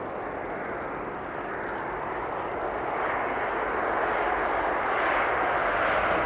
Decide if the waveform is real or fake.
real